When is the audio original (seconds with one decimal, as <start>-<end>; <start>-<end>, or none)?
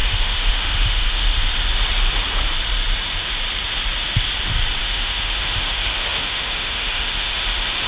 1.5-4.8